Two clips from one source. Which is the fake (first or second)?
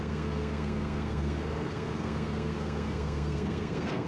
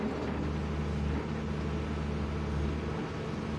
first